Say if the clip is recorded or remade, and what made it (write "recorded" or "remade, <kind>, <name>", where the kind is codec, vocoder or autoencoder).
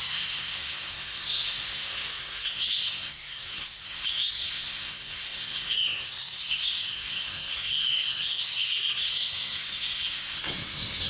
remade, codec, SNAC